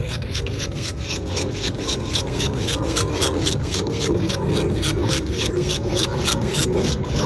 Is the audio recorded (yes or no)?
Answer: no